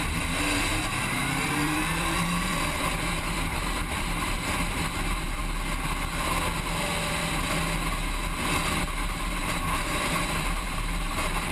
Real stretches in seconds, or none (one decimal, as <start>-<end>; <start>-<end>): 5.4-8.8